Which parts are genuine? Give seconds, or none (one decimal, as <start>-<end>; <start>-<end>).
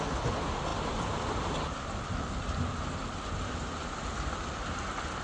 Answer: 0.0-5.2